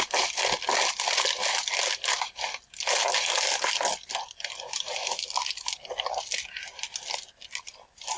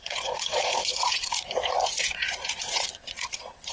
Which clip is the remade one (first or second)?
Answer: second